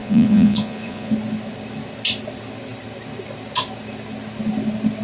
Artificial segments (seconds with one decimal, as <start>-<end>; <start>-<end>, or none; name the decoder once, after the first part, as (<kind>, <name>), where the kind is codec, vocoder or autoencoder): 0.0-1.1 (vocoder, Vocos)